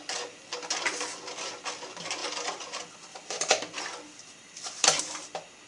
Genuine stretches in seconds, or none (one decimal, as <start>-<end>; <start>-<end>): 0.0-2.2; 5.0-5.7